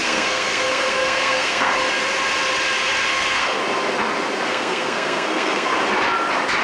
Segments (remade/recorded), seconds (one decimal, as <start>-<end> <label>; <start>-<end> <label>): 0.0-1.7 remade; 1.7-3.1 recorded; 3.1-3.6 remade; 3.6-4.5 recorded; 4.5-5.7 remade; 5.7-6.6 recorded